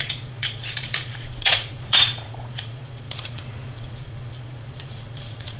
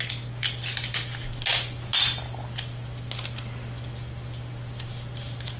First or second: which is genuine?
second